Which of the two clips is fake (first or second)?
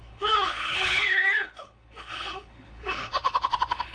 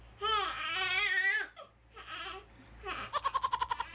first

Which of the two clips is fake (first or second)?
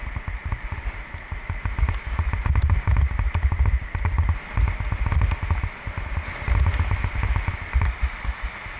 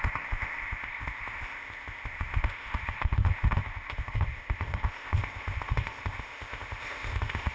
second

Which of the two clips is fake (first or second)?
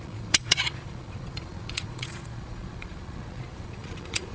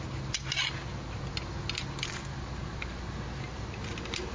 first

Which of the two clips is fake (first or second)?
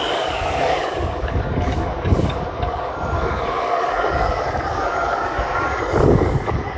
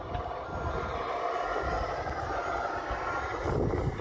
first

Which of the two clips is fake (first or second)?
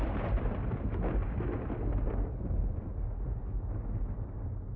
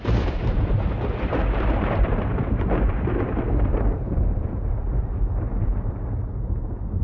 second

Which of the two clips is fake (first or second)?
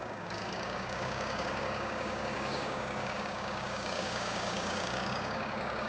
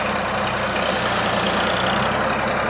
first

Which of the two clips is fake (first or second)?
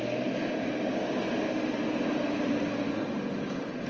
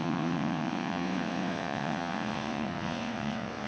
second